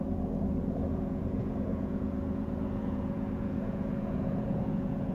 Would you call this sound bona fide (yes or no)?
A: no